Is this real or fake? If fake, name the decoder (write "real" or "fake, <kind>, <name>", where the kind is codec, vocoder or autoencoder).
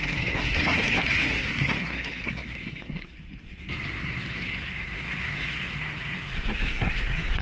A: fake, codec, SNAC